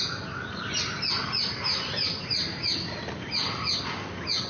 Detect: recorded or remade recorded